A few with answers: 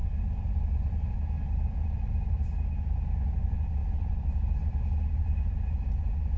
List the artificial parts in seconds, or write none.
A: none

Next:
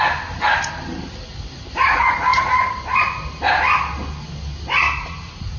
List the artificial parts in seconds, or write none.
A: none